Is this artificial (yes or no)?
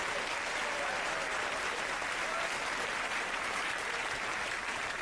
yes